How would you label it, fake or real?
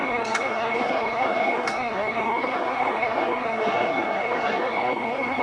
fake